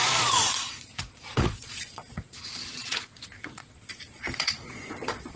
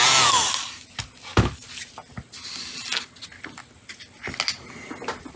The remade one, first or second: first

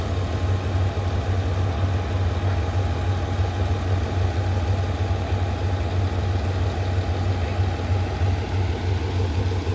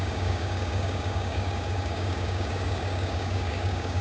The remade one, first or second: second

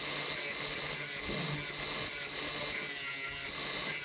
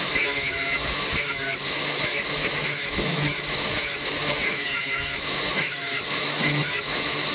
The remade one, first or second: second